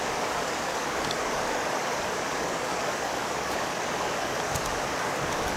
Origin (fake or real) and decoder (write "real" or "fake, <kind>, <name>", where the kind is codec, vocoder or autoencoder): fake, codec, DAC